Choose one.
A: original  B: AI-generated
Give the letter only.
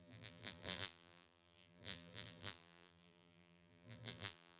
B